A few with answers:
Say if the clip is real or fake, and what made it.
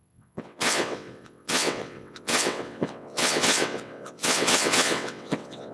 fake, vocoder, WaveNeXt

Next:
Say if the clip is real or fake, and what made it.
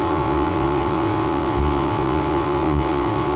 fake, vocoder, WaveNeXt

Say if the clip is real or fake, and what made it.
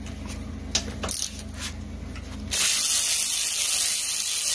real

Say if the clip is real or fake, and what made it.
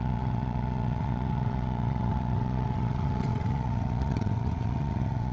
fake, vocoder, WaveNeXt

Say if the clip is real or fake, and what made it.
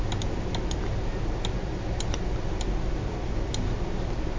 real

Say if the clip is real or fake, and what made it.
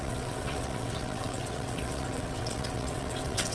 fake, vocoder, WaveNeXt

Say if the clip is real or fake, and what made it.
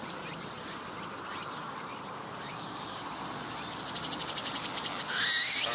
real